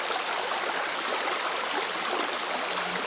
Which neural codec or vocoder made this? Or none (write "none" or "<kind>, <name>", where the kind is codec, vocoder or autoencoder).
none